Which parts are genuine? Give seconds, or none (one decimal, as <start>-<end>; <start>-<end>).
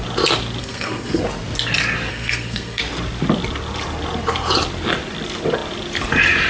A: 0.0-0.6; 1.2-2.1; 2.8-6.5